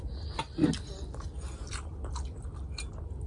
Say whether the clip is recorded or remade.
recorded